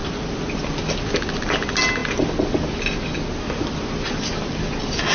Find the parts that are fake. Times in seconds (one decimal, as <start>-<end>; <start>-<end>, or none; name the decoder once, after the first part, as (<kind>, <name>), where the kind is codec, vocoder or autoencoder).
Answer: none